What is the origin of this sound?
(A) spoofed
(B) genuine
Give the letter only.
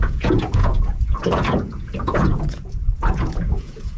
A